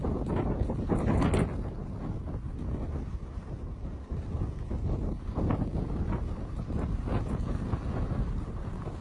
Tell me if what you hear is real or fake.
real